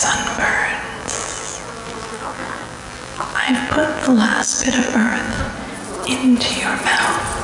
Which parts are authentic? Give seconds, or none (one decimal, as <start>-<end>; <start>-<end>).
0.0-1.0; 5.4-7.4